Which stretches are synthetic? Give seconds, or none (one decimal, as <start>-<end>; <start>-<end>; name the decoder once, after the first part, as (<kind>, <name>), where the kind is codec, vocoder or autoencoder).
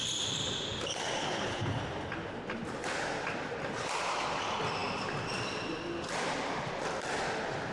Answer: 1.2-1.8 (codec, HILCodec)